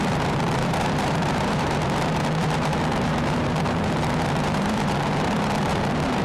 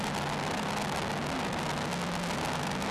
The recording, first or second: second